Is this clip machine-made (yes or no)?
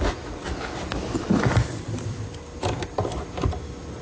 yes